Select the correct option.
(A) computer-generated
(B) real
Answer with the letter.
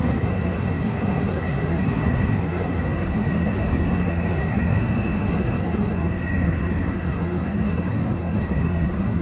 A